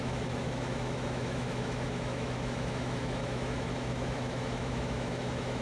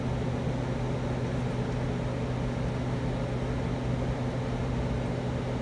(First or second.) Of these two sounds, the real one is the second